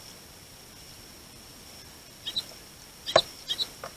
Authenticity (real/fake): real